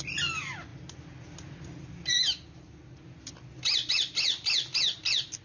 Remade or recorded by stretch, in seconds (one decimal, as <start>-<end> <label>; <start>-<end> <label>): 0.0-5.4 recorded